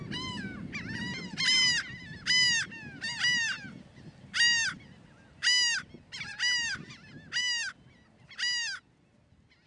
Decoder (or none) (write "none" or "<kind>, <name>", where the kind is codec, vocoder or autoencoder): none